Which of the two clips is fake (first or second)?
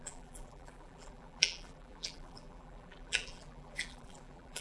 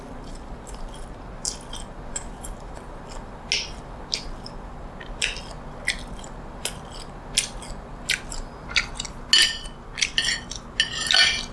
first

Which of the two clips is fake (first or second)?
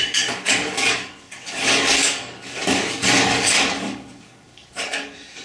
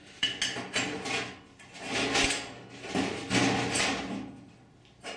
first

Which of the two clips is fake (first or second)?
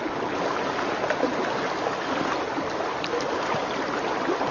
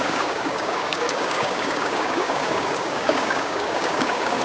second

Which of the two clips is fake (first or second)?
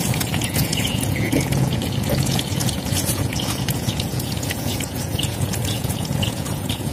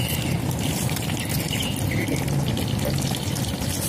first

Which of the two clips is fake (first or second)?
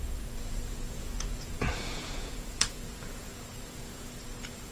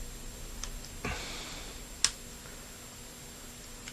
first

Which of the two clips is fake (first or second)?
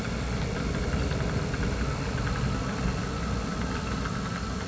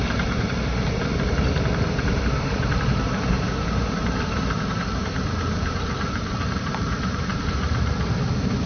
second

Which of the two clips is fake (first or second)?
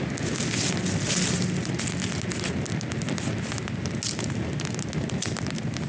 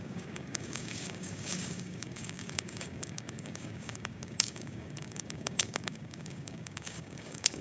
second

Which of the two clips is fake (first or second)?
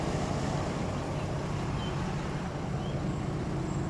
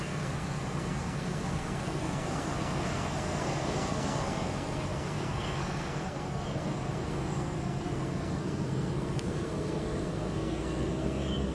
second